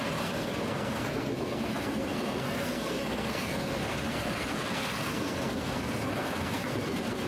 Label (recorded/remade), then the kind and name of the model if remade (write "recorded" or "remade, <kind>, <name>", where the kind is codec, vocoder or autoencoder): remade, codec, SNAC